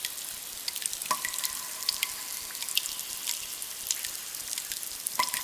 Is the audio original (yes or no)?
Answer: yes